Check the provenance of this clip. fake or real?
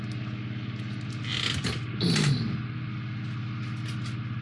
real